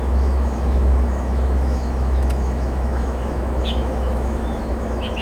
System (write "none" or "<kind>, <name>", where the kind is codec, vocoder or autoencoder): autoencoder, DAC-VAE